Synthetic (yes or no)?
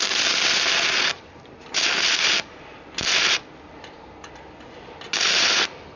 yes